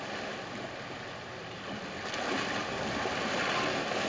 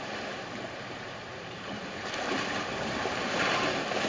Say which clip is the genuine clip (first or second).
first